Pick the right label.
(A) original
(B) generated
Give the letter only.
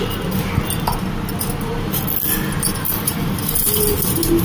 A